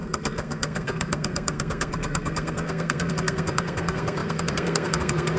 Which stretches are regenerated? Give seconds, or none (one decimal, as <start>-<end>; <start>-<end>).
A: 0.0-5.4